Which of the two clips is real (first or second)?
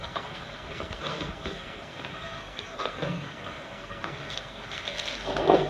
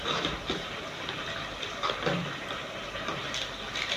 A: second